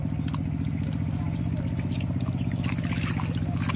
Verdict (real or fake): real